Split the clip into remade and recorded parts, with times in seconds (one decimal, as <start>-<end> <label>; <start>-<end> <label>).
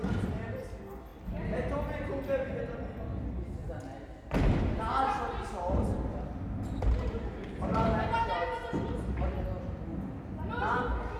0.0-3.6 recorded; 3.6-7.2 remade; 7.2-11.2 recorded